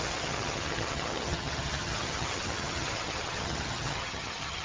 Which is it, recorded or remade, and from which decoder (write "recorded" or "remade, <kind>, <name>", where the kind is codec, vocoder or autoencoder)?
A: remade, vocoder, HiFi-GAN